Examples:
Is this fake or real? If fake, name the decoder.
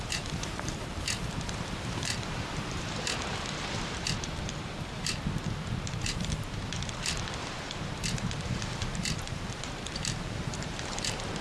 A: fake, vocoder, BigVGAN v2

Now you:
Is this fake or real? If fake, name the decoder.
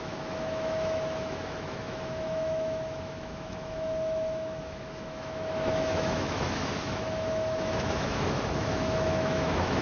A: fake, autoencoder, DAC-VAE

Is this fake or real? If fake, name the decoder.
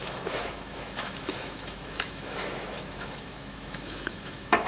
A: fake, autoencoder, DAC-VAE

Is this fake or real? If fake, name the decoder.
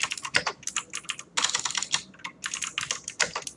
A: real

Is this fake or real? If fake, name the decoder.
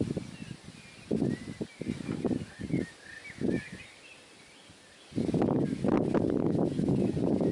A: real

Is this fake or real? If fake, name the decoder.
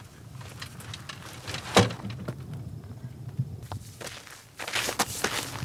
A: real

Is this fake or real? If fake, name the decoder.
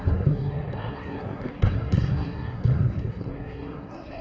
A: fake, codec, SNAC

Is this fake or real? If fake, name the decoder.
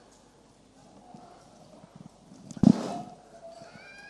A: real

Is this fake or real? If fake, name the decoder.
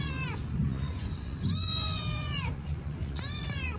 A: fake, vocoder, Vocos